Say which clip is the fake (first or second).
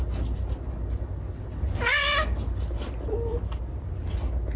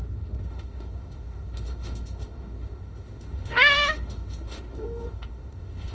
second